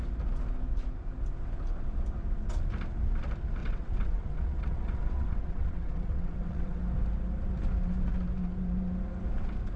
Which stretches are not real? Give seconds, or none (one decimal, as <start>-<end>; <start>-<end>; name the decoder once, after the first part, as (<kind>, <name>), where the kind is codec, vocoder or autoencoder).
3.6-6.8 (vocoder, WaveNeXt)